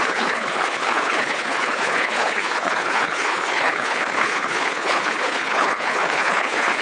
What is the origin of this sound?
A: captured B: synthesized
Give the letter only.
B